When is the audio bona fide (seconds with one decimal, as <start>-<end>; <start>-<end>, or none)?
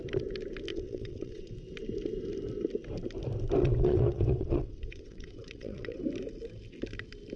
0.0-0.7; 1.5-3.6; 6.0-7.4